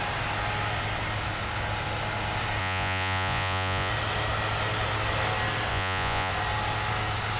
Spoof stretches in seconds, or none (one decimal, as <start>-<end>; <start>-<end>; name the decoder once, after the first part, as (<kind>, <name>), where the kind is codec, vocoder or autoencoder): 2.6-3.9 (vocoder, Vocos); 5.7-6.3